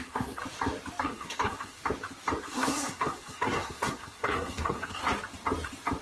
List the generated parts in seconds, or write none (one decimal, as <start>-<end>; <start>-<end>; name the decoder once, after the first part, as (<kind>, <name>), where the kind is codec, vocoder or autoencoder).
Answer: 0.0-0.4 (codec, SNAC); 1.0-1.8; 2.4-5.0